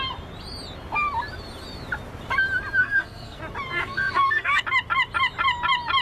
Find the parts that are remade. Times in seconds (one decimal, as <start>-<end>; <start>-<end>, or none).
2.8-3.4; 3.8-4.6